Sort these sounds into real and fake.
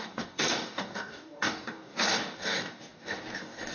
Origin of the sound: fake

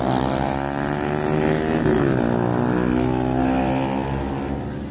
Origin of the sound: real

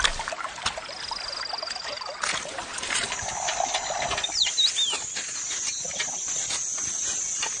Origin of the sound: real